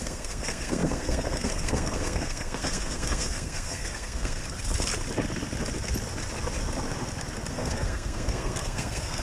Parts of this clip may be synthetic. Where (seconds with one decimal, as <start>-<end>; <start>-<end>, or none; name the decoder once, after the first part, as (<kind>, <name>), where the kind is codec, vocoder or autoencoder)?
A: 0.0-4.4 (codec, SNAC); 7.5-9.2